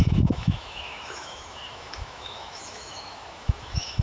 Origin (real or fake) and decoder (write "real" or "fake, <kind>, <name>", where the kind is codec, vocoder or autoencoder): fake, autoencoder, DAC-VAE